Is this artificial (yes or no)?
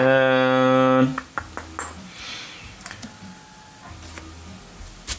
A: no